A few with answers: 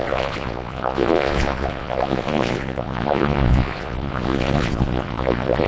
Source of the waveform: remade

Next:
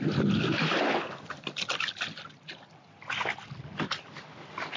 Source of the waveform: recorded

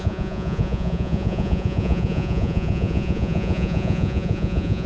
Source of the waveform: remade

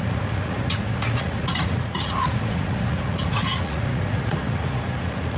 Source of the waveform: remade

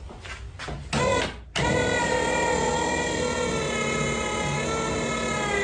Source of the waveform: recorded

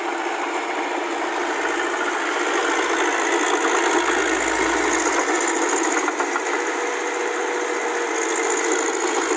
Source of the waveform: recorded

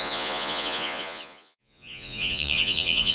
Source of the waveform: remade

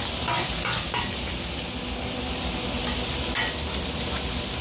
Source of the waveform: recorded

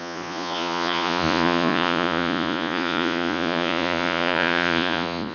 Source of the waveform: remade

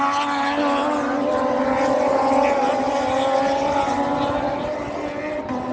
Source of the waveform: recorded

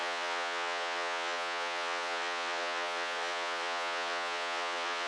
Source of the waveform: remade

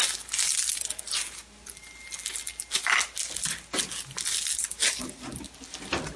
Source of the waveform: recorded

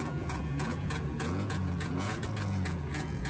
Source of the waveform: remade